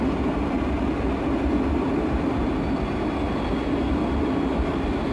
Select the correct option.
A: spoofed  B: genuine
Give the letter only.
B